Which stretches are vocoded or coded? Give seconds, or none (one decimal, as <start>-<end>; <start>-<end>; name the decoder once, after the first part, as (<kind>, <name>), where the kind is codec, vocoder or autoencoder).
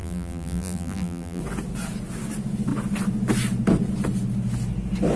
0.0-1.4 (vocoder, BigVGAN v2)